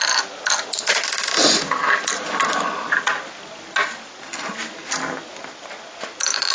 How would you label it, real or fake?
real